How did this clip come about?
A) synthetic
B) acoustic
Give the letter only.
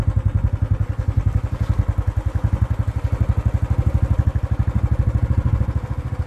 B